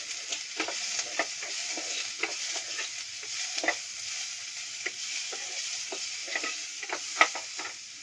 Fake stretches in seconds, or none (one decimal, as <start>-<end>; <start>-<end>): none